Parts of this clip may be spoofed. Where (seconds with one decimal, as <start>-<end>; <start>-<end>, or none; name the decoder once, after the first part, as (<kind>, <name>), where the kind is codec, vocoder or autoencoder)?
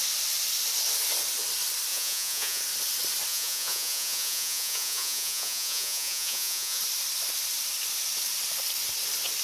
1.9-2.6 (vocoder, Vocos); 3.3-6.8